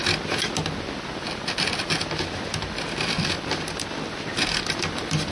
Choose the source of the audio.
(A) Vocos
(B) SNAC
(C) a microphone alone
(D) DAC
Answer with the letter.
C